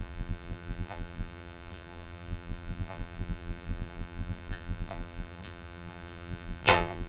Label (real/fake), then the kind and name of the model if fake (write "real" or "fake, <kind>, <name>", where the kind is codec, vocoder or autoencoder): fake, vocoder, BigVGAN v2